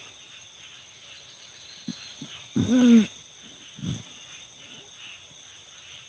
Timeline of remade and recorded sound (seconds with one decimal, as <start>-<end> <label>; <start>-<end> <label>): 0.0-6.1 recorded